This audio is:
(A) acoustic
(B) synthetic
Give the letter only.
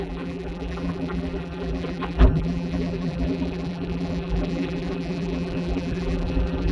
B